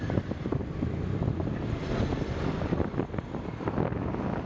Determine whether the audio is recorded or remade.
recorded